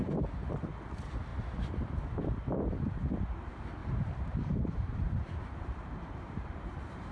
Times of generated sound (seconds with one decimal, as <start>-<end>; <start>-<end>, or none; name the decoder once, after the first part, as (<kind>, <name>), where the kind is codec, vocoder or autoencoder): 3.8-7.1 (vocoder, BigVGAN v2)